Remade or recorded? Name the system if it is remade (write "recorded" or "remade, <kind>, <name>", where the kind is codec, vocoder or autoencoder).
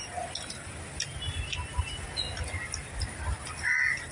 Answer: recorded